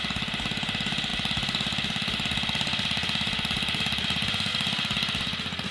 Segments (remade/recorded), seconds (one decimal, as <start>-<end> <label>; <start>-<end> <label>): 0.0-5.7 recorded